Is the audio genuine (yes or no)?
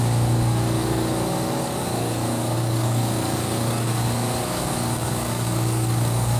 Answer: no